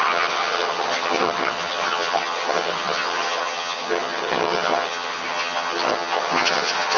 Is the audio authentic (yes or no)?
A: no